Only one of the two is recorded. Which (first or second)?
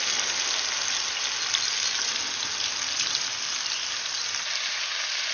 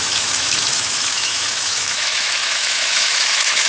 first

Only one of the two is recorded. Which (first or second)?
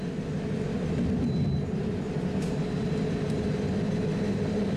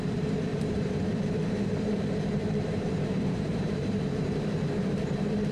first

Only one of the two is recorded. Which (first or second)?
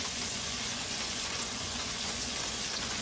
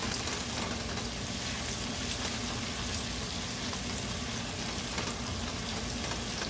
second